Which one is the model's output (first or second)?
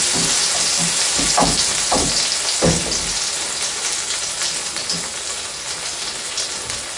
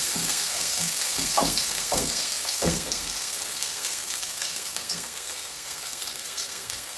second